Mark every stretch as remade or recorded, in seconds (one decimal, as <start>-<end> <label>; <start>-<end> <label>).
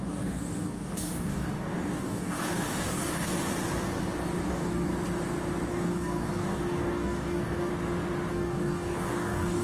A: 0.0-3.3 remade; 3.3-4.5 recorded; 4.5-4.9 remade; 4.9-5.7 recorded; 5.7-7.7 remade; 7.7-8.3 recorded; 8.3-9.6 remade